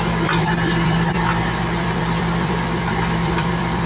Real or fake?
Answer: fake